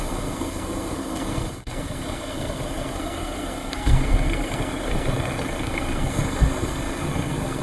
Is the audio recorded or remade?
remade